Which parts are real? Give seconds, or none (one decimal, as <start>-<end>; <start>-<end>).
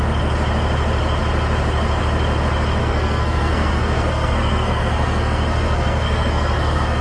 0.0-2.8